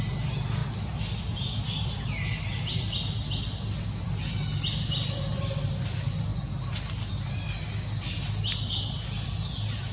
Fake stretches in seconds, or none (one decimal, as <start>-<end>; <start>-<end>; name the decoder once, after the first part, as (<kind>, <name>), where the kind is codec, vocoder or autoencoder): none